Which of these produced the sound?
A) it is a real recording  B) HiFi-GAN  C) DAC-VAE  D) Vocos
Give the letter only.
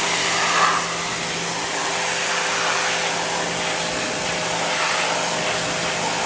A